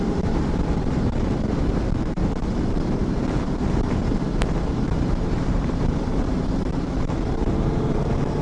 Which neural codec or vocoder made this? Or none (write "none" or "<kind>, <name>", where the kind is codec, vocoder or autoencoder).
vocoder, BigVGAN v2